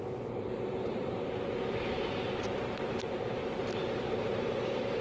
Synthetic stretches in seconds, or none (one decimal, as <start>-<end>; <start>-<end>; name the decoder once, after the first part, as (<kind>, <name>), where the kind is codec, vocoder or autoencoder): 0.7-3.7 (vocoder, BigVGAN v2)